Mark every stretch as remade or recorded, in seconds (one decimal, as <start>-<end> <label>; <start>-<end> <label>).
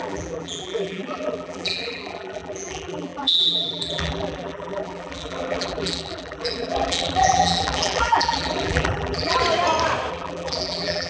0.0-9.4 remade; 9.4-10.1 recorded; 10.1-11.1 remade